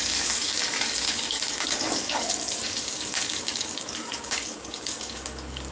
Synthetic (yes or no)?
yes